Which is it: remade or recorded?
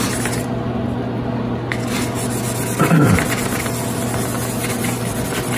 recorded